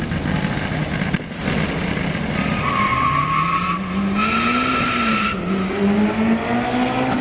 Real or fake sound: real